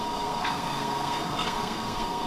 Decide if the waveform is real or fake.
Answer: fake